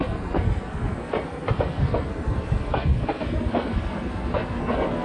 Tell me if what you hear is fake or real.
fake